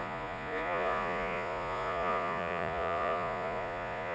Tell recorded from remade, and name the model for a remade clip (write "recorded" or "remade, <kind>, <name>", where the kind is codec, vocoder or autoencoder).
remade, vocoder, Vocos